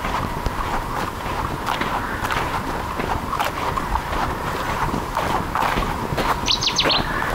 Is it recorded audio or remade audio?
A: recorded